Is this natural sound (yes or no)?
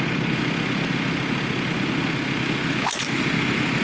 yes